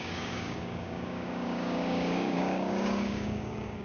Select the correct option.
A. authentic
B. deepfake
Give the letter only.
B